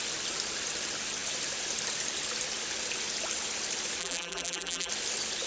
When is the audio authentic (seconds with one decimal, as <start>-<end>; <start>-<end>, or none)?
0.0-4.0; 4.9-5.5